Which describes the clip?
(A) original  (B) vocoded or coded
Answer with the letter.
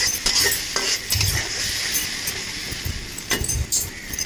A